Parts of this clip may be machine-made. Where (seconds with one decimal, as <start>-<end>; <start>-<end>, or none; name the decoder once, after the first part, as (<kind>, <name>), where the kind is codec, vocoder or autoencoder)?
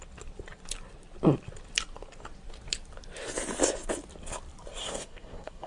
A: 4.8-5.7 (codec, SNAC)